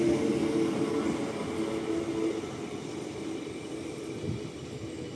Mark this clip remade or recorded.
recorded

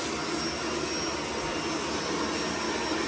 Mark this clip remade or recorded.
recorded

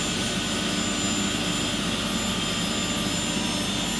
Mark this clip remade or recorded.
recorded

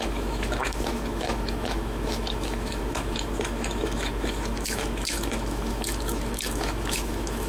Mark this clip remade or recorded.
remade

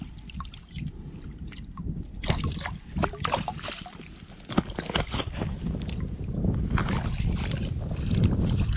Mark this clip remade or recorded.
recorded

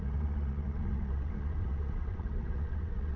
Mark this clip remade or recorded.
remade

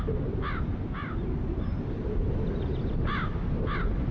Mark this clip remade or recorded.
recorded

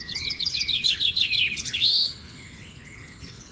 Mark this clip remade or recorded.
remade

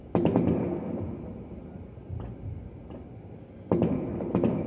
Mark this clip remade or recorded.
recorded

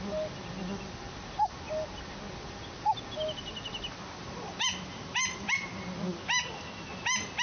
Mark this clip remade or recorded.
recorded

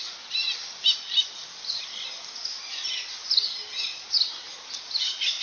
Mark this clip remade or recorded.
recorded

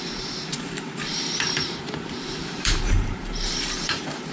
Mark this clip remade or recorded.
remade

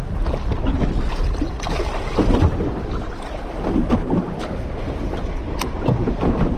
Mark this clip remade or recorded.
recorded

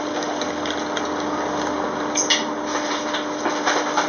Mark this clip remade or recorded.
recorded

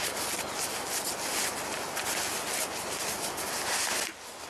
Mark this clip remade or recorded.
recorded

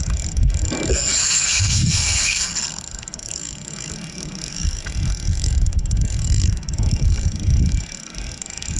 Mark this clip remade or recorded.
remade